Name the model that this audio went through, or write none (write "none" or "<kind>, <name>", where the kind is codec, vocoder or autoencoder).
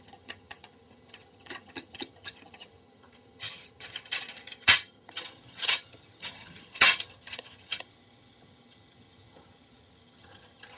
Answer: vocoder, HiFi-GAN